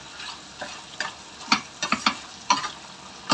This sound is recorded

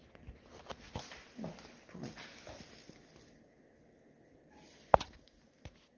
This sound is recorded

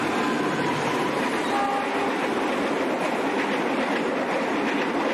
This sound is recorded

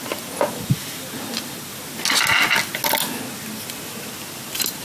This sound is recorded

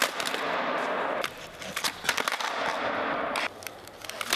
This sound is recorded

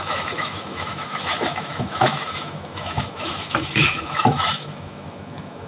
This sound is remade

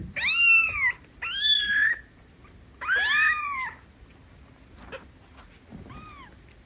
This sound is recorded